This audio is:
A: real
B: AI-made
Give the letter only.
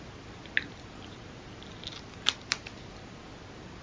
A